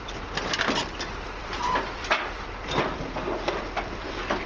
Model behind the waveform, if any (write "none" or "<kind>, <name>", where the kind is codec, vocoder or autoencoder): vocoder, BigVGAN v2